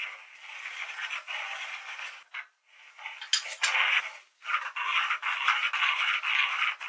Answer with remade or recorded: recorded